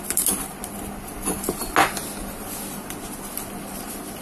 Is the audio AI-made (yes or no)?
no